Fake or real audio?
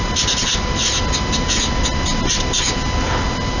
real